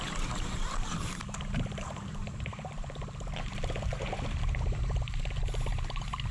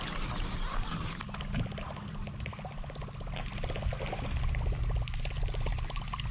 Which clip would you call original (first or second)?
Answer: second